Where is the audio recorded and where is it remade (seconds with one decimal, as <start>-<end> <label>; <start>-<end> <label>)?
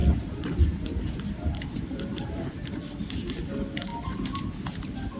0.0-3.1 remade; 3.1-5.2 recorded